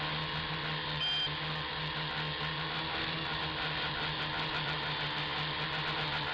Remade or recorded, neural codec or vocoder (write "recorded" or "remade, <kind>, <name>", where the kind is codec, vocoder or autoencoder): recorded